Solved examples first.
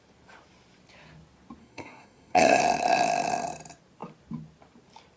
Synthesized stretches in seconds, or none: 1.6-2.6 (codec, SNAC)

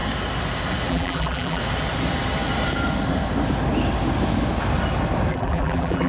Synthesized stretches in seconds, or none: 0.9-1.6 (vocoder, BigVGAN v2); 5.3-6.1

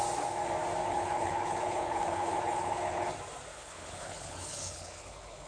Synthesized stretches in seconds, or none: 0.8-3.1 (codec, HILCodec); 3.5-5.5

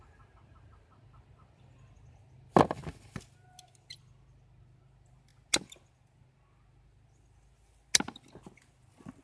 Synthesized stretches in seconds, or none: none

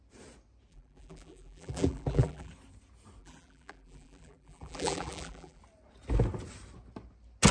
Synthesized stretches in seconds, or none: 0.7-2.5 (vocoder, BigVGAN v2); 3.2-5.6

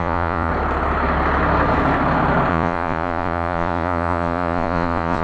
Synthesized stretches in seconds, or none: 0.0-0.5 (vocoder, Vocos); 2.5-5.2